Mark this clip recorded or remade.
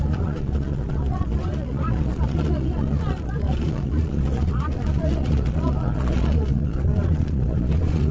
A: remade